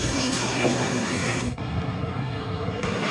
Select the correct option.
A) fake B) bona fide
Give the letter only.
A